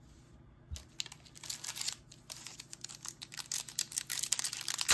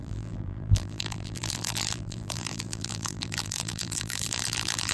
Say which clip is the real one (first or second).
first